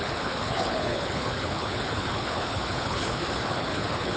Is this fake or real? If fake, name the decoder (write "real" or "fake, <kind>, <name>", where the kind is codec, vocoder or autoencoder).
fake, codec, HILCodec